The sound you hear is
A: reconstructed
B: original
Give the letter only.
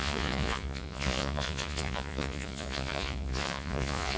A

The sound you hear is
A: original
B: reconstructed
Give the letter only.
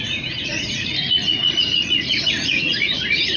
B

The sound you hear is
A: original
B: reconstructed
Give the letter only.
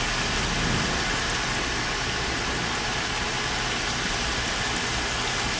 A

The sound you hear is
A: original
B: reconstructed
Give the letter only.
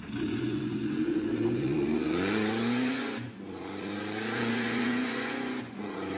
B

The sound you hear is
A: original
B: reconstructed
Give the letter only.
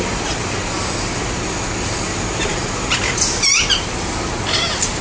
A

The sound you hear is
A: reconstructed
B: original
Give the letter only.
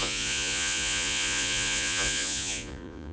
A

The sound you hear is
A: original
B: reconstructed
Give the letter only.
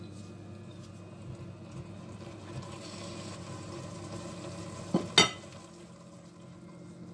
A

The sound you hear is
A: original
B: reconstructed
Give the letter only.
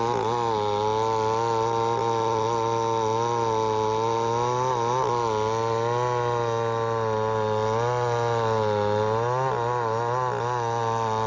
A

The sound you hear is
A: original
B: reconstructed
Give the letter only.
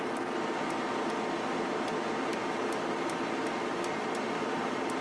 A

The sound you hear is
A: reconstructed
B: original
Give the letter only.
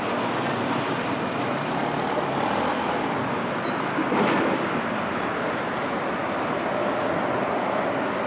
B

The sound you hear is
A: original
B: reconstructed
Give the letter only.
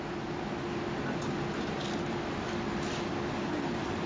A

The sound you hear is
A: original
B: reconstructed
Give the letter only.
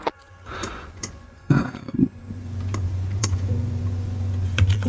B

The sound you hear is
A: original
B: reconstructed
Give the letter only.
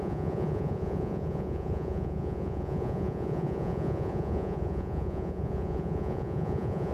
B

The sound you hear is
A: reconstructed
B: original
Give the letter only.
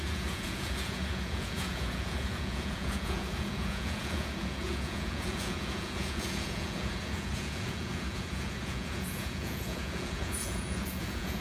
A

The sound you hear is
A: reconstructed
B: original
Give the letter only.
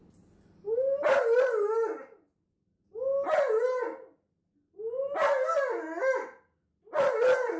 B